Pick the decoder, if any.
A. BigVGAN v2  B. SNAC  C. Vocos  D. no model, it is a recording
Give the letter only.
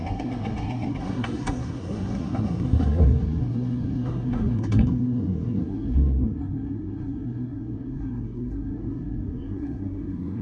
B